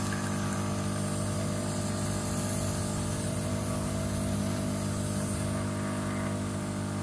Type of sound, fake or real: real